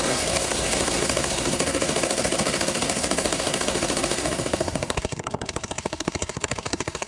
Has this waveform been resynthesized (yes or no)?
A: yes